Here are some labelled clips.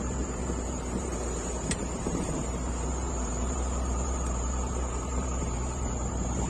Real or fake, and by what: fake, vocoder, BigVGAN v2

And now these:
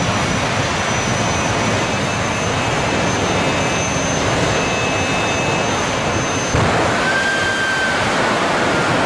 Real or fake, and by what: real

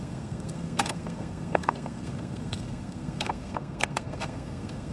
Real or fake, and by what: fake, codec, SNAC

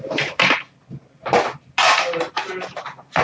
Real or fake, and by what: real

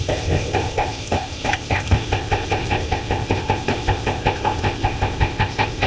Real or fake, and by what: fake, codec, ZipCodec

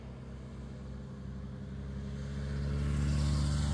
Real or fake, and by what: real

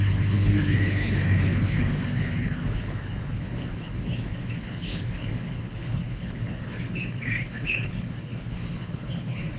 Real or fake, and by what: fake, codec, HILCodec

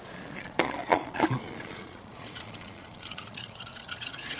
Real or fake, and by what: fake, vocoder, Vocos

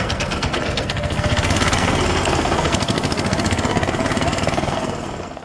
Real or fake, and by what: fake, codec, SNAC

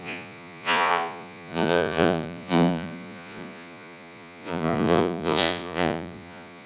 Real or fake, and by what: fake, vocoder, Vocos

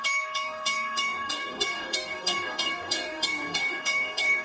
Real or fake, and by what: fake, codec, DAC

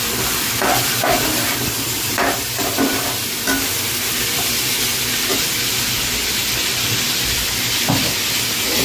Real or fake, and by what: fake, vocoder, BigVGAN v2